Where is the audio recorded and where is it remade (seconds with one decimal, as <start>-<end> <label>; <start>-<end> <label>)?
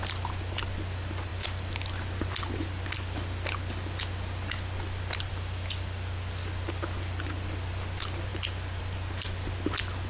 0.0-10.1 recorded